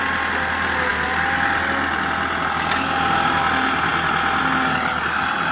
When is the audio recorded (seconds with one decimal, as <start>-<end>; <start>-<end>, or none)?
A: 0.0-5.5